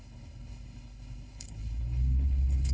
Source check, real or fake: fake